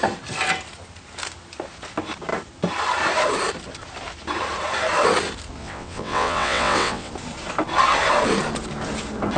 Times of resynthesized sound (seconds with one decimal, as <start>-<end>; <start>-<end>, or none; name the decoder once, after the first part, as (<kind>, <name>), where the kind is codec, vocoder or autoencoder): 5.6-7.1 (vocoder, WaveNeXt)